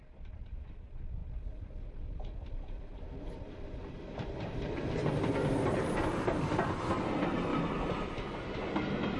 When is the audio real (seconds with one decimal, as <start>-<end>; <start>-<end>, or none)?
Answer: 0.0-9.2

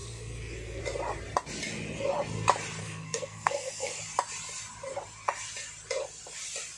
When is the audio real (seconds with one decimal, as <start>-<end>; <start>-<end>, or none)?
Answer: 0.8-2.8; 4.0-6.8

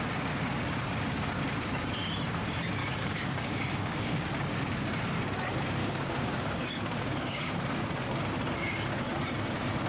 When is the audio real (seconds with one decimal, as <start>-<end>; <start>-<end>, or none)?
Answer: 0.0-2.8; 4.3-5.8; 7.5-9.9

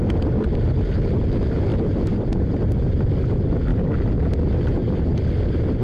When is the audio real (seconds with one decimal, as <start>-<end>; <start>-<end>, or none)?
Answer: 0.0-1.7; 3.1-5.1

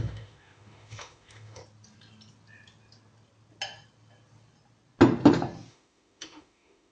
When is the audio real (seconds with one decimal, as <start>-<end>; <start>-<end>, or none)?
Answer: 1.6-5.7

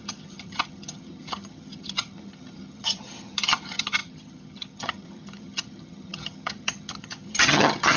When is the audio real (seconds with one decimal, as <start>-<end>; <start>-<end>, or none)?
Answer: none

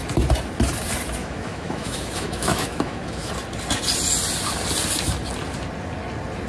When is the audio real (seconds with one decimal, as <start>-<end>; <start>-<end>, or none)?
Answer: 0.0-1.2; 3.3-6.5